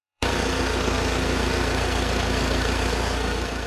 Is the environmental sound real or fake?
fake